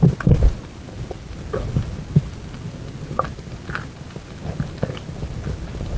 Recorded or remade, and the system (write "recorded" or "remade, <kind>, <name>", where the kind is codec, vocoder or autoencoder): recorded